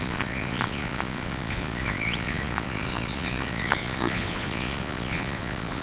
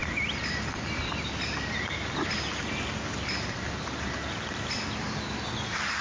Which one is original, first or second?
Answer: second